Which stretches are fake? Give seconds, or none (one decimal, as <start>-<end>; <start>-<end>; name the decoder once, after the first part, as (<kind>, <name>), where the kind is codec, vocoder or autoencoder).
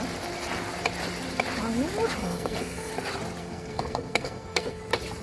2.2-2.9 (codec, SNAC); 3.4-4.8